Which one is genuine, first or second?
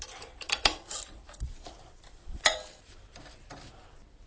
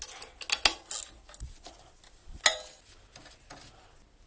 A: second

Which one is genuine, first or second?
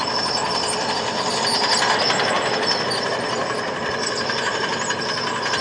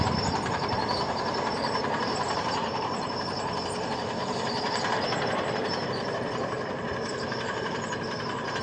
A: first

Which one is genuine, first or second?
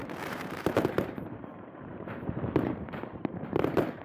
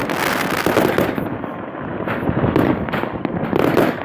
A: second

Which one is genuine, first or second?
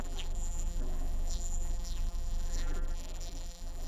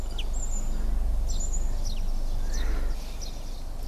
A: second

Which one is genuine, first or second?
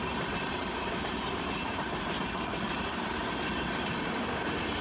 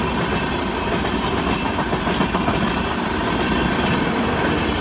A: second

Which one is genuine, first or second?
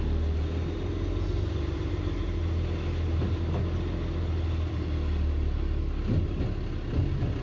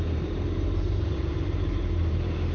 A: first